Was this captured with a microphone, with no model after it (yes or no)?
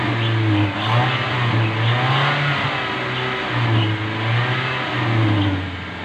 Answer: yes